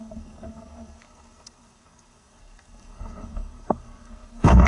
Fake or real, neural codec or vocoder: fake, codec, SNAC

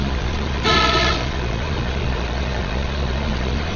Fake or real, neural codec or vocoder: fake, vocoder, Vocos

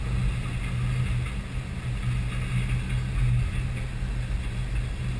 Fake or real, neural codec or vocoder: real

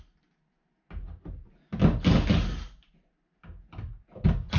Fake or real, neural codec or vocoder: real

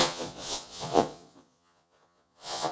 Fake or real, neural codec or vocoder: fake, vocoder, Vocos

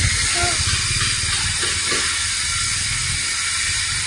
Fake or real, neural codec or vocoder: real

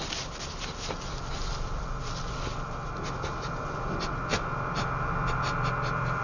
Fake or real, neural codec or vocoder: real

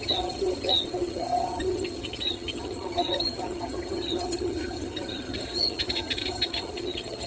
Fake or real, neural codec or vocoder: fake, vocoder, HiFi-GAN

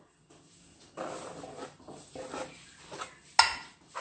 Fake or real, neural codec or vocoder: real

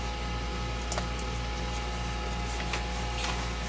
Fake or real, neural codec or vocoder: real